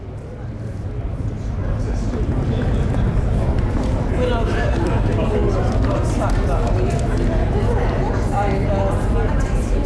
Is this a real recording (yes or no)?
yes